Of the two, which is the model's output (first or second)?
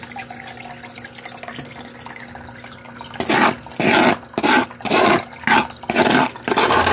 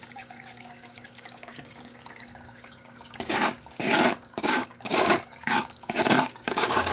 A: second